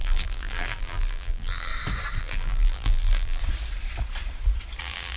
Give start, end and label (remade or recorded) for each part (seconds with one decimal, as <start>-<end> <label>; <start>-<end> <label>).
0.0-1.7 remade; 1.7-2.2 recorded; 2.2-3.4 remade; 3.4-4.8 recorded; 4.8-5.2 remade